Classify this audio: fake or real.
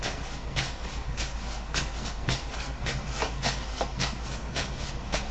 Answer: fake